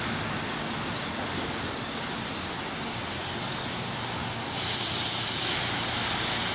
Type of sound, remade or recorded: recorded